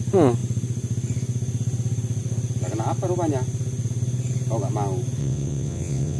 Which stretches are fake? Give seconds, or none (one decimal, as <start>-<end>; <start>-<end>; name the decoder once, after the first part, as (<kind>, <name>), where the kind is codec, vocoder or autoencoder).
5.2-6.2 (vocoder, WaveNeXt)